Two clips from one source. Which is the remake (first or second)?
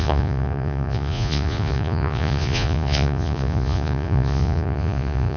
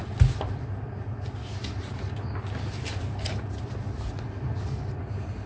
first